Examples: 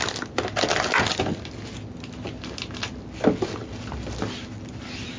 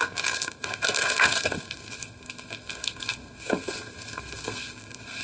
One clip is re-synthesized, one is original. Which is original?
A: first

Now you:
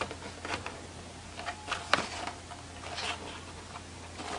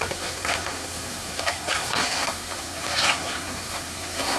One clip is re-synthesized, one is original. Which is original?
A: first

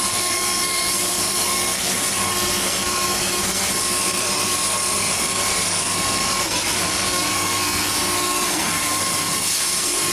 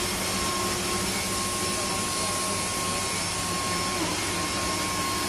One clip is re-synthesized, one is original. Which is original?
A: second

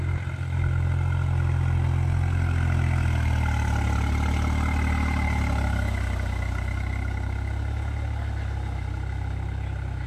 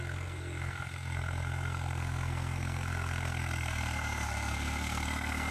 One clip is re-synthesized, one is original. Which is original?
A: first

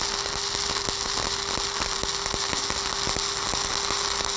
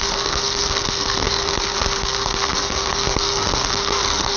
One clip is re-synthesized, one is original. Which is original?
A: first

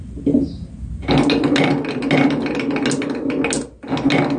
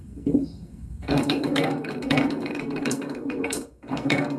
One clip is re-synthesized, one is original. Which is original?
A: first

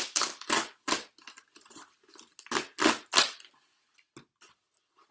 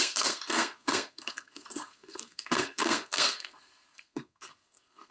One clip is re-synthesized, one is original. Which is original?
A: first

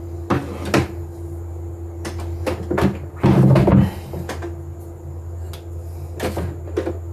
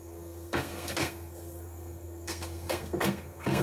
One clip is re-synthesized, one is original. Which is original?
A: first